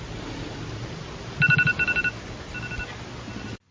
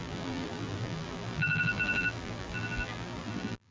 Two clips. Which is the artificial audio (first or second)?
second